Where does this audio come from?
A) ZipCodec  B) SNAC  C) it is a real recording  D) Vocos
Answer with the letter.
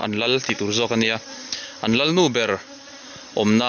C